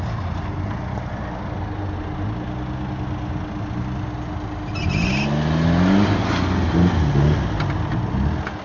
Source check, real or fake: real